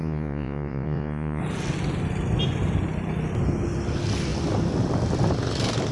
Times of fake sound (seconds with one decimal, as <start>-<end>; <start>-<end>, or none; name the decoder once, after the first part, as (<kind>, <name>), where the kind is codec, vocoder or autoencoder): 0.0-1.4 (vocoder, Vocos)